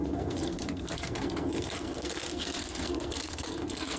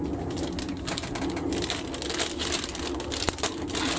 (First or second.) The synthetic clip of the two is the first